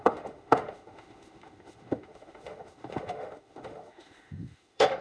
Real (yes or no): no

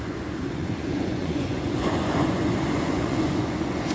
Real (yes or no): no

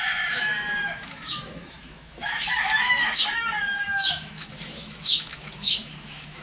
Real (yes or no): no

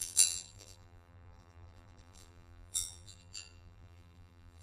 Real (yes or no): no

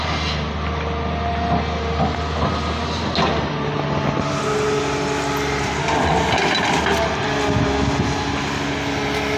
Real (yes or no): yes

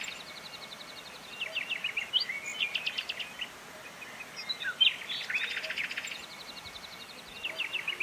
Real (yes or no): yes